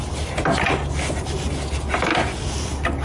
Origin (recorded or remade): recorded